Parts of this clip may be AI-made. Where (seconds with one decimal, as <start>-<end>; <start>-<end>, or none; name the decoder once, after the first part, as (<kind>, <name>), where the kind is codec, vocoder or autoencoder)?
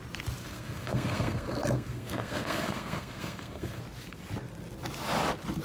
0.4-3.8 (codec, SNAC)